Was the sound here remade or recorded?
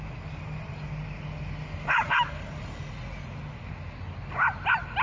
recorded